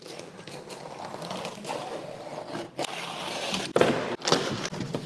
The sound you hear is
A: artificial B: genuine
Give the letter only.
B